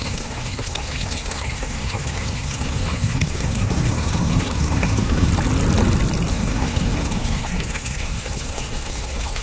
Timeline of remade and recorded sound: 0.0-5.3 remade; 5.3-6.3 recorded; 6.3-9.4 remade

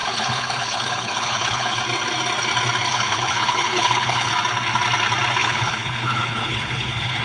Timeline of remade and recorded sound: 0.0-1.8 remade; 1.8-2.9 recorded; 2.9-4.3 remade; 4.3-5.4 recorded; 5.4-7.2 remade

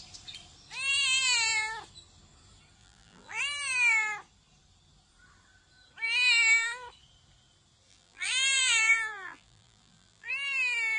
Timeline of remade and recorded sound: 0.0-2.8 recorded; 2.8-3.4 remade; 3.4-7.9 recorded; 7.9-10.3 remade; 10.3-11.0 recorded

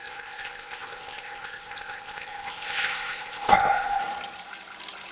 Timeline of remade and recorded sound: 0.0-4.0 remade; 4.0-5.1 recorded

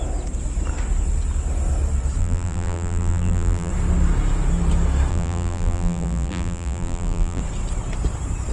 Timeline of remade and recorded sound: 0.0-2.2 recorded; 2.2-3.7 remade; 3.7-5.1 recorded; 5.1-7.4 remade; 7.4-8.5 recorded

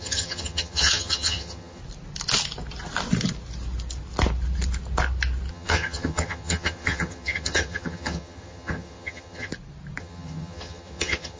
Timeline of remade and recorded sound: 0.0-1.8 remade; 1.8-5.5 recorded; 5.5-9.5 remade; 9.5-10.0 recorded; 10.0-11.4 remade

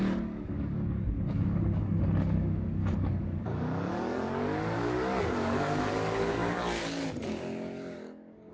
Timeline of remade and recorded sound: 0.0-8.5 remade